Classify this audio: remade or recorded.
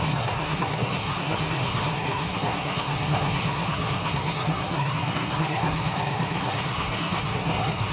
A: remade